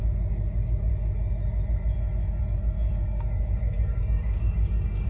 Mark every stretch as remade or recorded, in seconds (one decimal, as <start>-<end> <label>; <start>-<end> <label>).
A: 0.0-0.9 remade; 0.9-2.4 recorded; 2.4-5.1 remade